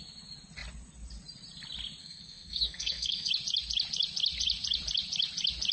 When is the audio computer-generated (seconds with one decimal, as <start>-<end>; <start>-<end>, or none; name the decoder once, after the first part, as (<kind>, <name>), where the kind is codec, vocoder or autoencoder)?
2.0-3.3 (codec, SNAC)